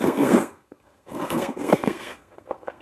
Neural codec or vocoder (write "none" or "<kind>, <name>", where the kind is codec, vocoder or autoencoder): codec, SNAC